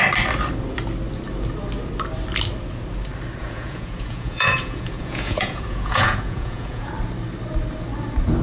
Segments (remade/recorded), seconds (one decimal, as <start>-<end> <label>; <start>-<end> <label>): 0.0-3.4 recorded; 3.4-6.9 remade; 6.9-8.4 recorded